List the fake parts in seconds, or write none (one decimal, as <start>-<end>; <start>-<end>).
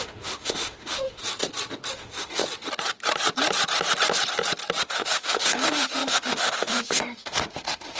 0.0-1.2; 1.9-2.4; 4.8-8.0